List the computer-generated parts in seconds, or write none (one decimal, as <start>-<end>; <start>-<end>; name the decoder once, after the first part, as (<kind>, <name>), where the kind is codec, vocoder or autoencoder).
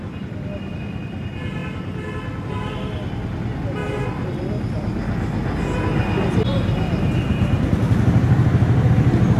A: none